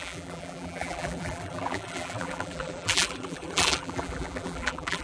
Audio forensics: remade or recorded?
remade